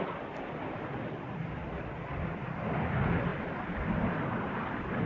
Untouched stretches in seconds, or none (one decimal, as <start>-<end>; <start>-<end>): 0.0-3.3; 4.1-5.1